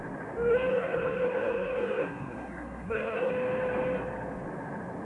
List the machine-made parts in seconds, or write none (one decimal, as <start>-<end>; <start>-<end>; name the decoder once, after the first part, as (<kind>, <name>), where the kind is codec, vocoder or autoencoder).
0.7-3.3 (codec, SNAC)